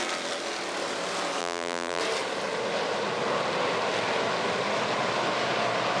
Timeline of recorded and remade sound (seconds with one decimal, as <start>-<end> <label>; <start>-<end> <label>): 0.0-1.4 recorded; 1.4-2.0 remade; 2.0-6.0 recorded